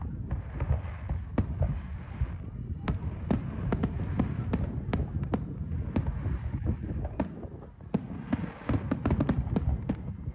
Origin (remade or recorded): recorded